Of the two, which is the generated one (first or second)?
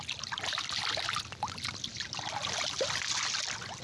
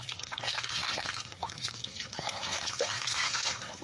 second